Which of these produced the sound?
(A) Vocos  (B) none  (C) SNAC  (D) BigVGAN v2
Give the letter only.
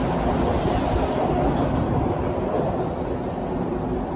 B